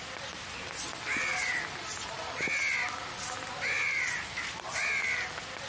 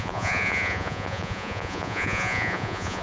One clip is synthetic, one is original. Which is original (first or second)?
first